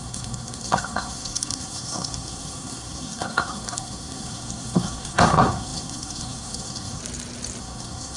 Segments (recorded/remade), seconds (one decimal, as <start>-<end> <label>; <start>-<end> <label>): 0.0-7.0 remade; 7.0-7.6 recorded; 7.6-8.2 remade